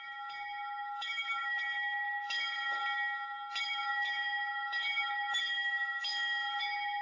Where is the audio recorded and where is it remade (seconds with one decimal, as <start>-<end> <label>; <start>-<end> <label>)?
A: 0.0-2.8 remade; 2.8-3.6 recorded; 3.6-7.0 remade